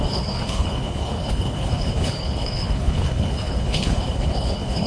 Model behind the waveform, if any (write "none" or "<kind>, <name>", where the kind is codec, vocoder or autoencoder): codec, HILCodec